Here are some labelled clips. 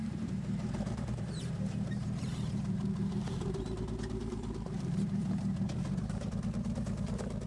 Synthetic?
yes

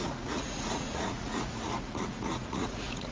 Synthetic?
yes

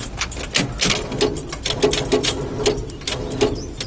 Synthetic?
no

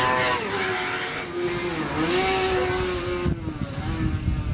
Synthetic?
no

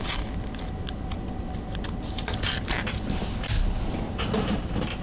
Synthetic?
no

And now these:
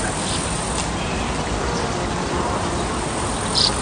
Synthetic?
no